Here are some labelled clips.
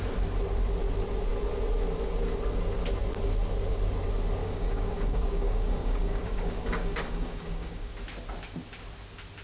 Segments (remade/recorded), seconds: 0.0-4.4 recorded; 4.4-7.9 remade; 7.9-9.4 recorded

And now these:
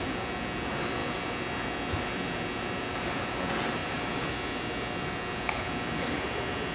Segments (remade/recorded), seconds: 0.0-6.7 recorded

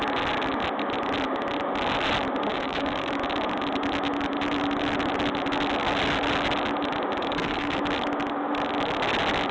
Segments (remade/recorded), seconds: 0.0-2.5 recorded; 2.5-3.1 remade; 3.1-7.2 recorded; 7.2-7.8 remade; 7.8-9.5 recorded

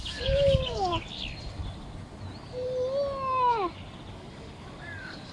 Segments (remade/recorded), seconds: 0.0-0.9 remade; 0.9-4.1 recorded; 4.1-5.3 remade

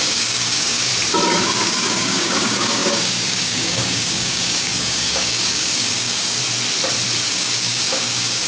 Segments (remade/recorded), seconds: 0.0-0.9 remade; 0.9-1.4 recorded; 1.4-6.4 remade; 6.4-7.3 recorded; 7.3-8.5 remade

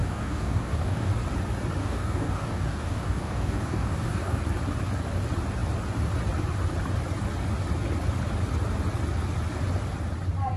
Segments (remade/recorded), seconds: 0.0-1.1 remade; 1.1-1.8 recorded; 1.8-4.4 remade; 4.4-10.6 recorded